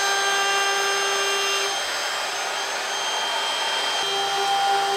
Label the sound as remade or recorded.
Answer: recorded